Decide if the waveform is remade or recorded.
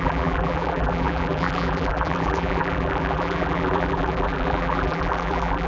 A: remade